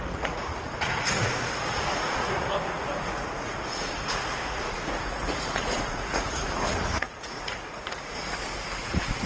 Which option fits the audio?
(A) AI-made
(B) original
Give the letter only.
A